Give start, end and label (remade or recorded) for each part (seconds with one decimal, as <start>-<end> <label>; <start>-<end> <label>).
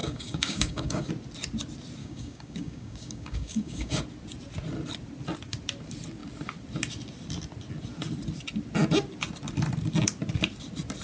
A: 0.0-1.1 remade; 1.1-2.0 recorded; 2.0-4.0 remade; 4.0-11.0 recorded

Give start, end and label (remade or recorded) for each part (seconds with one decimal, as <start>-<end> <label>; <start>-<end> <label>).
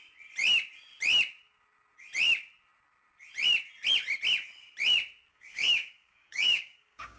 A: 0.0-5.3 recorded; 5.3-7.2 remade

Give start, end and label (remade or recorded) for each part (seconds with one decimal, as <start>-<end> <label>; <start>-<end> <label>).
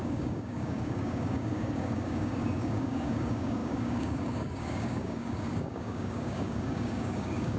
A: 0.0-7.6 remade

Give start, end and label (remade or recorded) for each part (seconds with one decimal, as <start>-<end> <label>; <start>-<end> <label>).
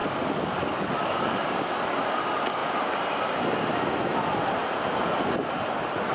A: 0.0-1.4 remade; 1.4-6.1 recorded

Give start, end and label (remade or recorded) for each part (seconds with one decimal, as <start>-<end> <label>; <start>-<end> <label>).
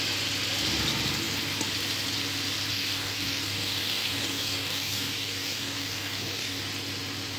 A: 0.0-2.7 recorded; 2.7-6.6 remade; 6.6-7.4 recorded